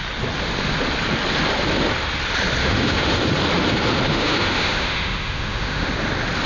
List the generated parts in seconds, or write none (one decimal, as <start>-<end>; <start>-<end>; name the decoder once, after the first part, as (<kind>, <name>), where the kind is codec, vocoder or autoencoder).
2.6-3.1 (autoencoder, DAC-VAE); 4.1-5.9